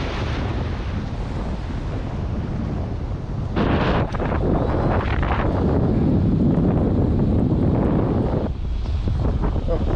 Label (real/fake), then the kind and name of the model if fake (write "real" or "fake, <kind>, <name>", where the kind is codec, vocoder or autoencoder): real